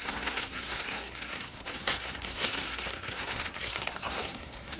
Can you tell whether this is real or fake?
fake